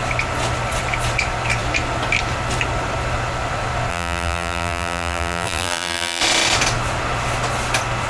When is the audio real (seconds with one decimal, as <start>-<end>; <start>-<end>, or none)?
0.0-3.9; 6.2-8.1

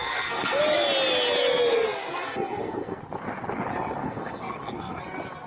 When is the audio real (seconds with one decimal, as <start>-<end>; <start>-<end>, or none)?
0.6-2.0; 3.0-4.0; 5.0-5.5

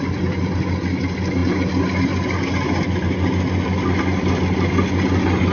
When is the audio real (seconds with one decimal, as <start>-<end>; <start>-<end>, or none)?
0.0-5.5

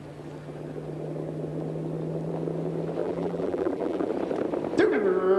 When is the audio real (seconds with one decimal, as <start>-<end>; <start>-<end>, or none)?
0.0-3.0; 4.1-5.4

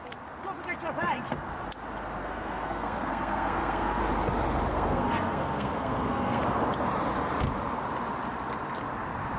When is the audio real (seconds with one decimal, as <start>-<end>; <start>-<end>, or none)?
0.0-2.2; 4.0-4.7; 6.4-9.4

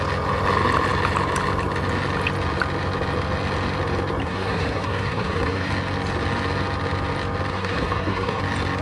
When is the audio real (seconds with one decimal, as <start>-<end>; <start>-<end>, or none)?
0.0-4.2; 5.7-7.5; 8.4-8.8

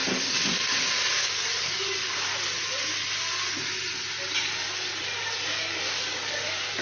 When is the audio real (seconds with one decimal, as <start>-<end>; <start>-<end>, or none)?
0.0-1.1; 2.3-5.5

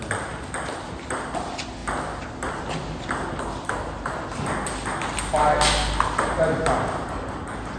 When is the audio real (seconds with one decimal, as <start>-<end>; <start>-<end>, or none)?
0.0-7.8